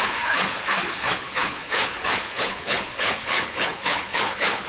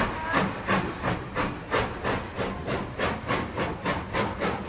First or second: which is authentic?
second